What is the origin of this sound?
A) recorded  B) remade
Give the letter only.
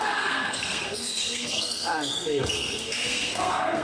B